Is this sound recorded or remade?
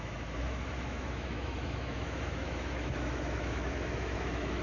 remade